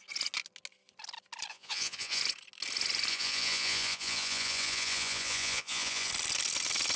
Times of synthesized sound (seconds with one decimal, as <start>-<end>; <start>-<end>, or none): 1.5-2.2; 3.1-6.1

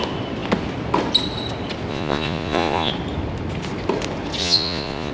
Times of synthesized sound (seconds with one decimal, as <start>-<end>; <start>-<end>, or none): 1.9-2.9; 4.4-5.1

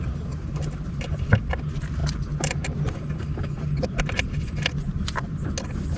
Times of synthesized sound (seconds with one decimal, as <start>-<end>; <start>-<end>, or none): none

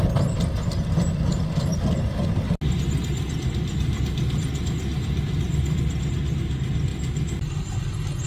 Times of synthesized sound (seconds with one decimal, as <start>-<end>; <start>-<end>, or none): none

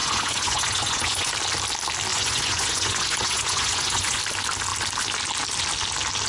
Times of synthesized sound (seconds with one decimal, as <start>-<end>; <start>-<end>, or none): 0.0-1.3; 2.1-4.2

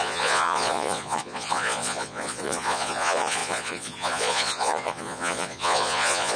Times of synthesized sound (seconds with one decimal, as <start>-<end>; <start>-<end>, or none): 0.0-6.4